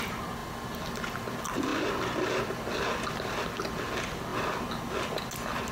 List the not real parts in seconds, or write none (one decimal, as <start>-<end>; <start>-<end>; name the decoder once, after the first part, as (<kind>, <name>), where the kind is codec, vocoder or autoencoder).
none